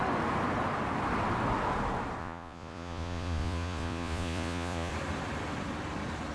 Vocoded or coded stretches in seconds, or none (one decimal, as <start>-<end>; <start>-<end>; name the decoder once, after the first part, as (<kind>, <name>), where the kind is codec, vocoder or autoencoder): 2.2-4.9 (vocoder, Vocos)